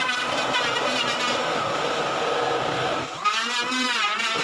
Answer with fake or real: real